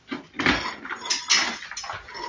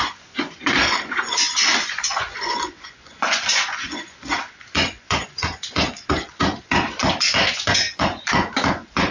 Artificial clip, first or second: second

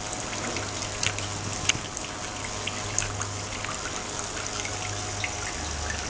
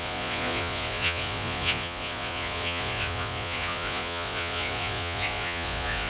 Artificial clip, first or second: second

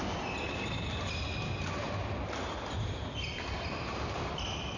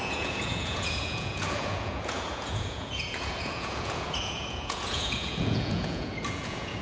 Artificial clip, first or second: second